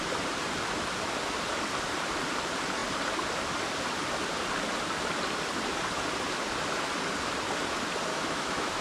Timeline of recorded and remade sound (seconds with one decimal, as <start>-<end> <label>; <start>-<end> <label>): 0.0-8.1 recorded; 8.1-8.8 remade